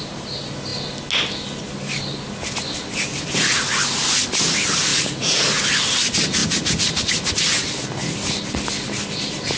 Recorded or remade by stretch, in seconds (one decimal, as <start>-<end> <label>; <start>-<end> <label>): 0.0-4.9 recorded; 4.9-5.6 remade; 5.6-9.6 recorded

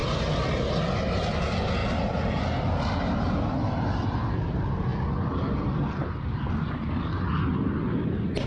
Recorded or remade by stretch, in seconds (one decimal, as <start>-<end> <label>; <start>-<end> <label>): 0.0-8.5 recorded

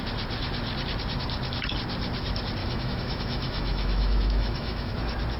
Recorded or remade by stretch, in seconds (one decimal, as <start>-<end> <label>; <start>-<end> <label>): 0.0-2.6 recorded; 2.6-4.9 remade; 4.9-5.4 recorded

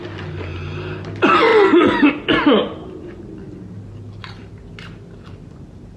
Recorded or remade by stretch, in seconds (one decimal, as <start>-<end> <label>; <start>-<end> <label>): 0.0-6.0 recorded